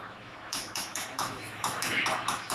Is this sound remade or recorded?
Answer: remade